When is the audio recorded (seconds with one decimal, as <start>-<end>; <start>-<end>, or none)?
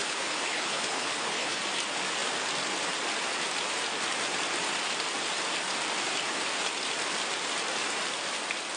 1.6-8.8